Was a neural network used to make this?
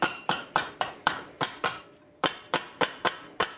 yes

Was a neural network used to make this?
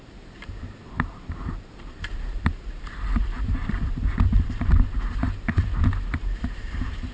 yes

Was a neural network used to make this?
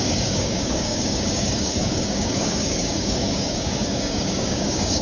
yes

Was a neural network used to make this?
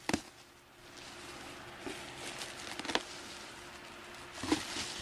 no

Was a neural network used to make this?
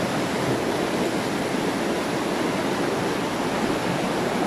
no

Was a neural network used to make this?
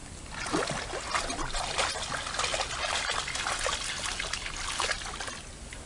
no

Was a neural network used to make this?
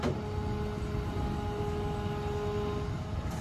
no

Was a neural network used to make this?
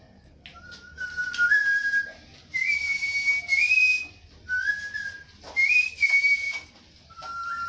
no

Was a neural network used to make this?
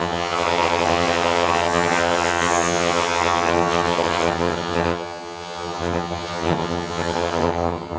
yes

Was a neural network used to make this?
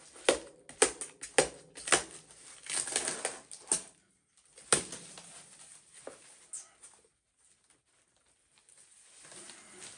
no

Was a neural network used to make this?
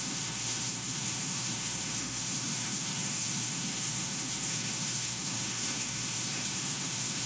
yes